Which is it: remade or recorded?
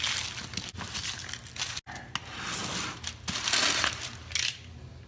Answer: recorded